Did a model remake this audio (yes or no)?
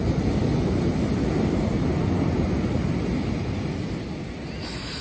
no